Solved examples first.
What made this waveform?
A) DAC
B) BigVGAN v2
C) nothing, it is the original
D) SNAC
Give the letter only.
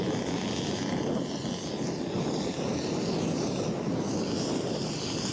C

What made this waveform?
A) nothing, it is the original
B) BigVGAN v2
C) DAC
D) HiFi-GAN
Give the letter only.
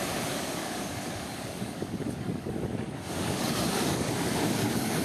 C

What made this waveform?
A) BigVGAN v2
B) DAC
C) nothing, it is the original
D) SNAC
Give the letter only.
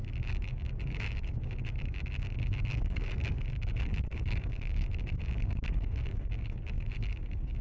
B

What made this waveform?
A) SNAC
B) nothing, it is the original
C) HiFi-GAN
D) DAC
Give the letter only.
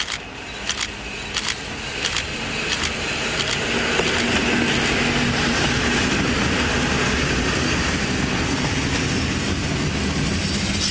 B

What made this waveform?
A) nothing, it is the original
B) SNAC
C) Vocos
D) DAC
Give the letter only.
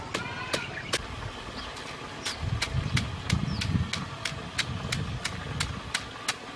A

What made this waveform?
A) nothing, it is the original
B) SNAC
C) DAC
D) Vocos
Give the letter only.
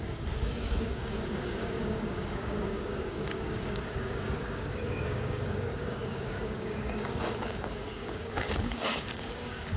C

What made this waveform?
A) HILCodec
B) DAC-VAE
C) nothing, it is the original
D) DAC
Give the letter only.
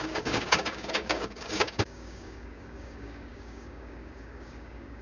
D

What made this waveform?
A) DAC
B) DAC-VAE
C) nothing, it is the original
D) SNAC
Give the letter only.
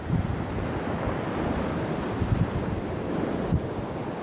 C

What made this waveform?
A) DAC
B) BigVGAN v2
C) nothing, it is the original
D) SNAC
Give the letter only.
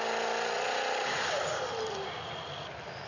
C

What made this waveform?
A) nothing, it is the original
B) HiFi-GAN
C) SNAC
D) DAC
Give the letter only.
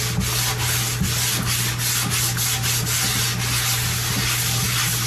A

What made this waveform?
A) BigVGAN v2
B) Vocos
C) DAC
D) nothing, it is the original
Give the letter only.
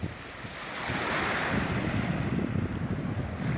D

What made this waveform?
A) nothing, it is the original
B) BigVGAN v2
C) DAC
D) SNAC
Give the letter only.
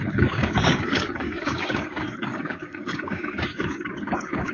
C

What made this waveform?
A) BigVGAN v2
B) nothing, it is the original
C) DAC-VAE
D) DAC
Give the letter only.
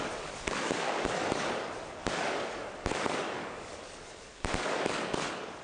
D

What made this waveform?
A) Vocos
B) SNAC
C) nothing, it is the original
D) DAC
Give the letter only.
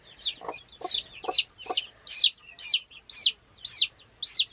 C